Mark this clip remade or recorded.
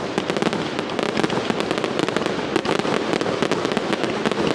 recorded